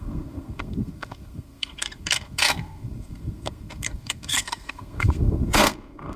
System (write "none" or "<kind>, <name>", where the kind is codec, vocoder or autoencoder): codec, SNAC